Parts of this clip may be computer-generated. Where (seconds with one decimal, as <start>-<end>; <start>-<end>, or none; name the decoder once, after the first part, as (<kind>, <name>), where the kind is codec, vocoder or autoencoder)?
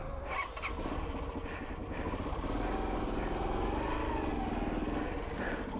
none